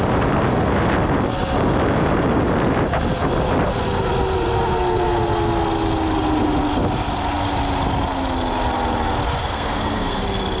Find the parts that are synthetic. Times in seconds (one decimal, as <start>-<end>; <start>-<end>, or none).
9.4-10.2